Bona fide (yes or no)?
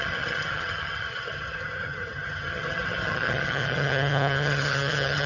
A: no